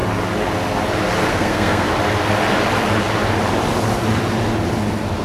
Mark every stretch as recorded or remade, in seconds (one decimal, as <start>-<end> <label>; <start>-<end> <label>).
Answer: 0.0-1.3 recorded; 1.3-1.9 remade; 1.9-5.2 recorded